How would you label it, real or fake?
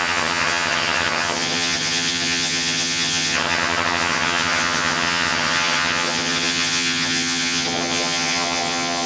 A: fake